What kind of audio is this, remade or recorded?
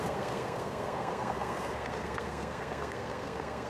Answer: remade